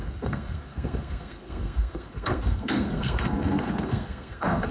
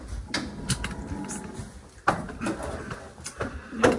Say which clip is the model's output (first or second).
first